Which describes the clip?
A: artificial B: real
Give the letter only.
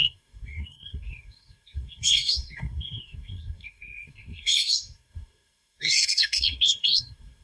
A